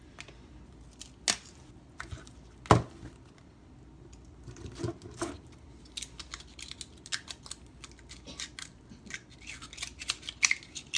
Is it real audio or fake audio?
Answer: real